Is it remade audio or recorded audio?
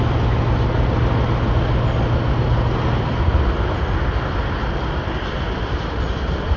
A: recorded